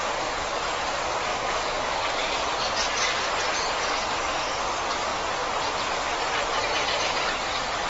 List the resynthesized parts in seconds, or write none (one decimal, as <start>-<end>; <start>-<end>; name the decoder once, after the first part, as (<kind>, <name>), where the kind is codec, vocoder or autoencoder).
1.3-2.3 (codec, DAC)